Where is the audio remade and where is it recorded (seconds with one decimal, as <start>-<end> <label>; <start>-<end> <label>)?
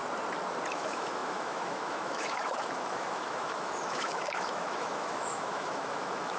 0.0-0.7 recorded; 0.7-6.4 remade